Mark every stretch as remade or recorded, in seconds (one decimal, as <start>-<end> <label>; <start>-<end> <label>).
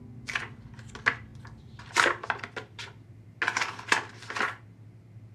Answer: 0.0-1.3 recorded; 1.3-3.4 remade; 3.4-5.3 recorded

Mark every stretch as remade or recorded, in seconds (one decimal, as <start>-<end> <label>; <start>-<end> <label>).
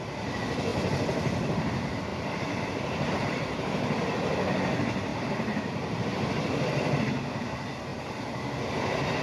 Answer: 0.0-2.1 recorded; 2.1-3.1 remade; 3.1-5.1 recorded; 5.1-7.0 remade; 7.0-9.2 recorded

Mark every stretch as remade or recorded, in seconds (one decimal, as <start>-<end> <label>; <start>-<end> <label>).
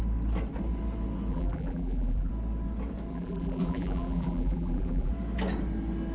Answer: 0.0-1.3 recorded; 1.3-2.3 remade; 2.3-3.1 recorded; 3.1-5.1 remade; 5.1-6.1 recorded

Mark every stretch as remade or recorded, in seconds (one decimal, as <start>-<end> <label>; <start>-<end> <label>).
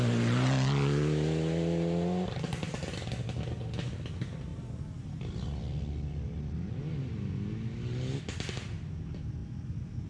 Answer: 0.0-4.5 recorded; 4.5-5.6 remade; 5.6-10.1 recorded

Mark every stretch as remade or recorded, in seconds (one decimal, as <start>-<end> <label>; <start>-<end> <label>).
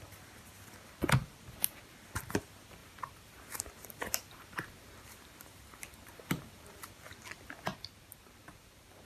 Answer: 0.0-2.8 recorded; 2.8-6.9 remade; 6.9-7.7 recorded; 7.7-9.1 remade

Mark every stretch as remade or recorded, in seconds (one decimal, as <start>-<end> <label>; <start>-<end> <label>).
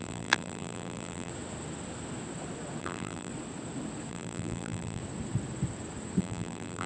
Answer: 0.0-1.3 remade; 1.3-2.8 recorded; 2.8-3.3 remade; 3.3-4.1 recorded; 4.1-5.0 remade; 5.0-6.2 recorded; 6.2-6.9 remade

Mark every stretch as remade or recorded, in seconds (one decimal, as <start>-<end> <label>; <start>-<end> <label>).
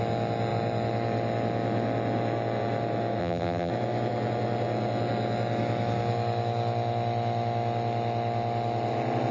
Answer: 0.0-3.2 recorded; 3.2-3.7 remade; 3.7-9.3 recorded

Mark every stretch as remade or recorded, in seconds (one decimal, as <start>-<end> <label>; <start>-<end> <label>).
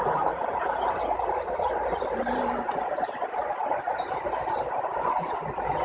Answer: 0.0-0.4 remade; 0.4-3.9 recorded; 3.9-5.8 remade